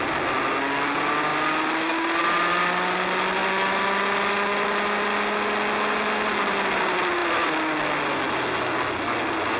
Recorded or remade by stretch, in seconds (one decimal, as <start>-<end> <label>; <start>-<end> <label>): 0.0-9.6 recorded